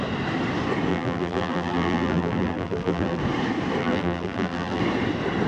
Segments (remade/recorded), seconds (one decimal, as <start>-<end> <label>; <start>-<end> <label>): 0.0-0.9 recorded; 0.9-3.2 remade; 3.2-3.8 recorded; 3.8-4.8 remade; 4.8-5.5 recorded